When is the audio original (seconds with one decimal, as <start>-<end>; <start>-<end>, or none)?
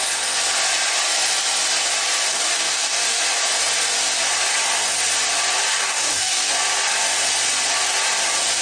0.0-2.3; 3.2-5.7; 6.5-8.6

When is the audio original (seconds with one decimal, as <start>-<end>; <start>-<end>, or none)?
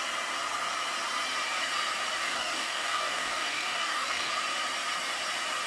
0.0-2.2; 4.3-5.7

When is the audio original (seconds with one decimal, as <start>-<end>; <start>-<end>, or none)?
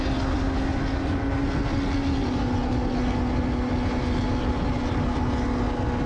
0.0-6.1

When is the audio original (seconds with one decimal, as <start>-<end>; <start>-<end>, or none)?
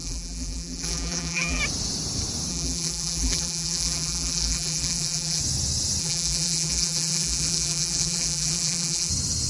1.6-2.5; 5.4-6.0; 9.1-9.5